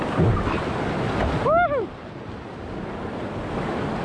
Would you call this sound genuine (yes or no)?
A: yes